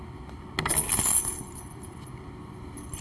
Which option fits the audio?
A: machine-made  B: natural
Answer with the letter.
B